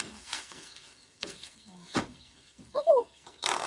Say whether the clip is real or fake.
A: fake